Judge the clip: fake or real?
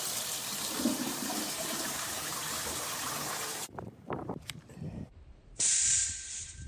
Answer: fake